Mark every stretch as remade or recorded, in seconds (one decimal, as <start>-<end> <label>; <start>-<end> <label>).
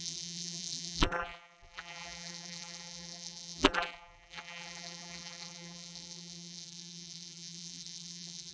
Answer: 0.0-8.5 remade